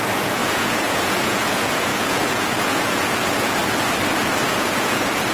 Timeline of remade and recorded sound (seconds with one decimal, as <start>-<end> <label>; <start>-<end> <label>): 0.0-3.6 remade; 3.6-4.5 recorded; 4.5-5.3 remade